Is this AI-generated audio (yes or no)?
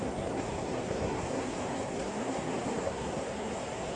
yes